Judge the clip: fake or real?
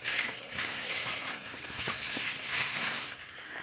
fake